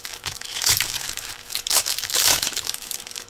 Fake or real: fake